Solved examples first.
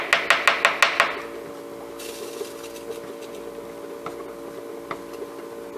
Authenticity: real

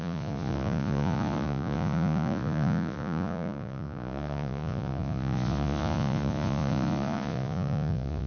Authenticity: fake